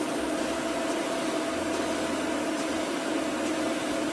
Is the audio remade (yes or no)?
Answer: no